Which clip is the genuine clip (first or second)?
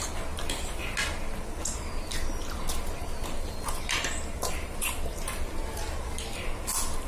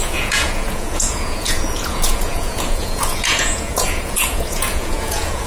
first